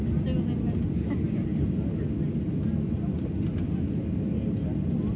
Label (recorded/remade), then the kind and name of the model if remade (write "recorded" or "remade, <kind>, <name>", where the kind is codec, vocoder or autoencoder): recorded